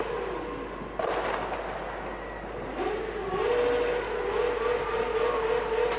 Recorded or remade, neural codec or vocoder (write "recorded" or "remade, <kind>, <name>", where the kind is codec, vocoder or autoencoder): recorded